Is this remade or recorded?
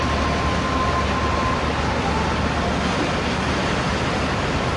recorded